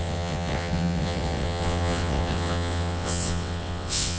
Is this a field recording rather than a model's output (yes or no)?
no